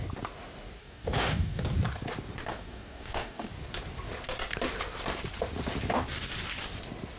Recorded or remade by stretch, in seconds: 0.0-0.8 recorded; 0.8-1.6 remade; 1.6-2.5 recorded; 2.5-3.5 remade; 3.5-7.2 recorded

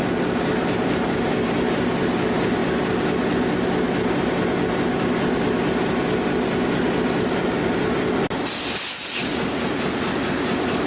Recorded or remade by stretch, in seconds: 0.0-10.9 recorded

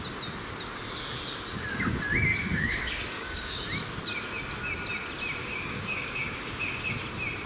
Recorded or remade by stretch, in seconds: 0.0-2.3 recorded; 2.3-3.6 remade; 3.6-5.4 recorded; 5.4-6.9 remade; 6.9-7.5 recorded

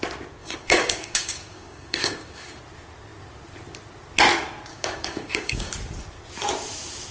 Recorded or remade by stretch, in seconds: 0.0-0.4 recorded; 0.4-2.6 remade; 2.6-4.7 recorded; 4.7-5.7 remade; 5.7-7.1 recorded

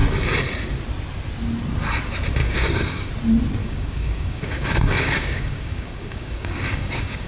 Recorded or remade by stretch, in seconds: 0.0-2.4 recorded; 2.4-3.1 remade; 3.1-3.6 recorded; 3.6-7.3 remade